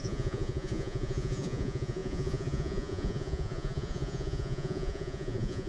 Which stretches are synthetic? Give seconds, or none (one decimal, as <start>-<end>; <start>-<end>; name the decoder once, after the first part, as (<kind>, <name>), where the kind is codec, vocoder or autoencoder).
0.0-5.7 (vocoder, Vocos)